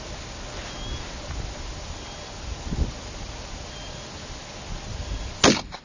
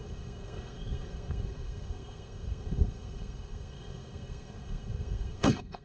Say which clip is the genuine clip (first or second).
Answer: first